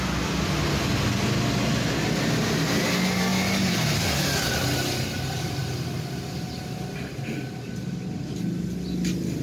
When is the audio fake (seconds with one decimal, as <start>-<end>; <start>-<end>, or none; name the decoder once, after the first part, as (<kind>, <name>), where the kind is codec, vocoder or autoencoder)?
none